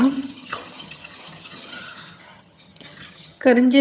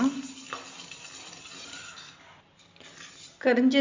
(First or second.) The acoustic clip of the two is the second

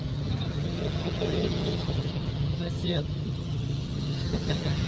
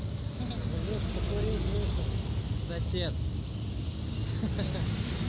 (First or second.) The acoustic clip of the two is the second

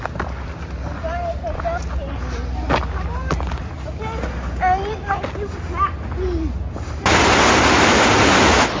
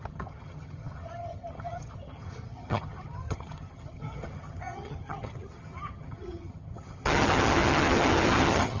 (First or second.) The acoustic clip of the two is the first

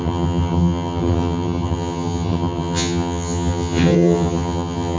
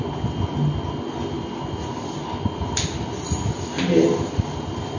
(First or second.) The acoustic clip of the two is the second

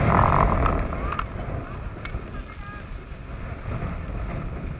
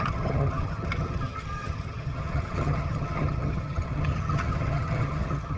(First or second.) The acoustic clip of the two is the first